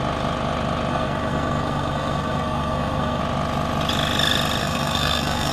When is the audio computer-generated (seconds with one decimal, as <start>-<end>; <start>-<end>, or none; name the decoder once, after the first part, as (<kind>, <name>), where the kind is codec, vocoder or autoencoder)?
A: 0.9-3.2 (codec, SNAC); 4.6-5.5